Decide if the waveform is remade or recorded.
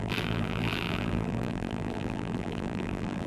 remade